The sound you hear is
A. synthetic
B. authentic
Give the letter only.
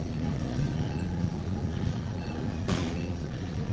A